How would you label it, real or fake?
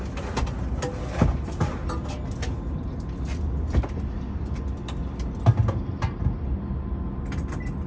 real